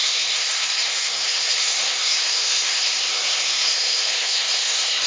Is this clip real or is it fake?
fake